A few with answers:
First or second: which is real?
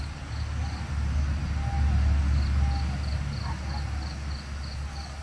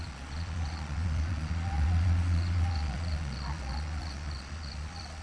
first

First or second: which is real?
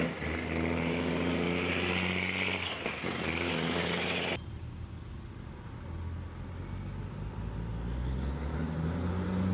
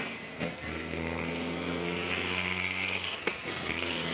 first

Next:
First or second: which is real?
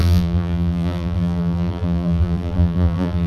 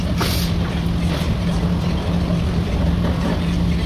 second